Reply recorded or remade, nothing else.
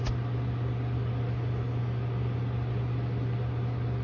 recorded